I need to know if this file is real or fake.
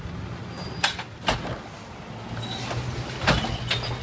real